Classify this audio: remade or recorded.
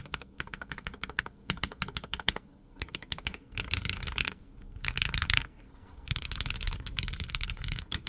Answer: remade